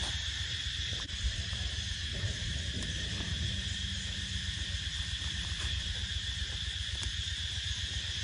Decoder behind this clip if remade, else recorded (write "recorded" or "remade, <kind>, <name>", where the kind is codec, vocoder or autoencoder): remade, vocoder, BigVGAN v2